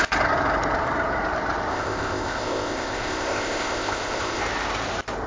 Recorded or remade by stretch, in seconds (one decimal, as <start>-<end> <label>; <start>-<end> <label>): 0.0-1.7 recorded; 1.7-4.4 remade; 4.4-5.3 recorded